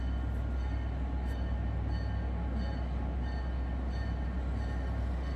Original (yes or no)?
yes